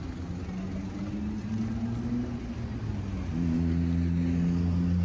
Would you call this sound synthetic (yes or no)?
no